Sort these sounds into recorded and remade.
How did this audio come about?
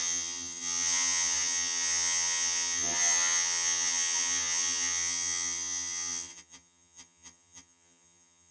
remade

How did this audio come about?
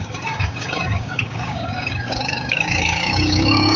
remade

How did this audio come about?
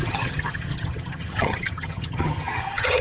remade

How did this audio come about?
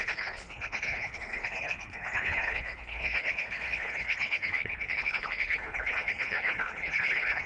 remade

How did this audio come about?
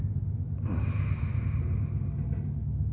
recorded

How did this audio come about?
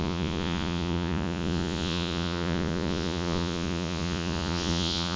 remade